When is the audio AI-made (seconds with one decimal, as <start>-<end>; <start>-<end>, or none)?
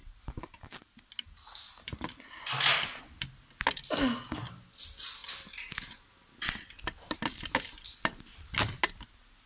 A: none